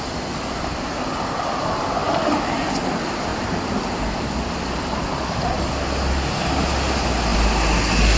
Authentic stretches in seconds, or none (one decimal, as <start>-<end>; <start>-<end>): 0.0-2.0; 2.7-3.3; 5.7-8.2